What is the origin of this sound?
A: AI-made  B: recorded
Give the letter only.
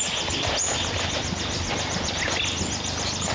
B